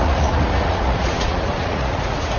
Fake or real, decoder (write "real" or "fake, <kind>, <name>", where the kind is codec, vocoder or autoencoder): fake, vocoder, Vocos